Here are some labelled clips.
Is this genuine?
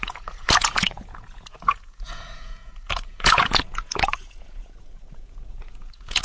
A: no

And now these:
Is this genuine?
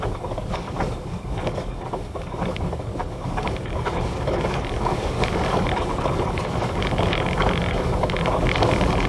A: no